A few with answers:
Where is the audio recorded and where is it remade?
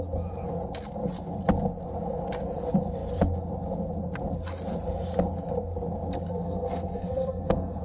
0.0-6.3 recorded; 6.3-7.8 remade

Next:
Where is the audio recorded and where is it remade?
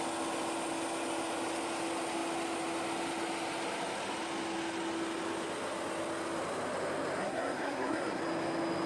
0.0-7.2 recorded; 7.2-8.2 remade; 8.2-8.9 recorded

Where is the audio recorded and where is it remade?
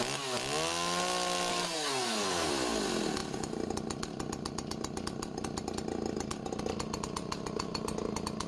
0.0-1.5 recorded; 1.5-2.5 remade; 2.5-8.5 recorded